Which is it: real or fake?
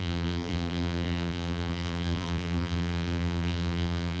fake